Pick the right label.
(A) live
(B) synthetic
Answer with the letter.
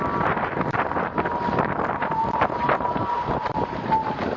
A